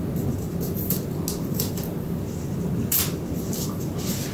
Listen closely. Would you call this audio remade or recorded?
recorded